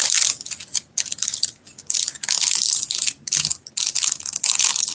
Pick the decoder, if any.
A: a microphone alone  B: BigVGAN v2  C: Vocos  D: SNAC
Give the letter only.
A